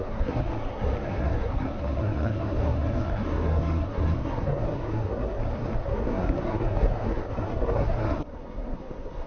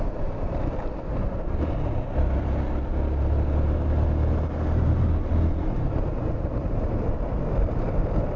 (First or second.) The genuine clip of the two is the second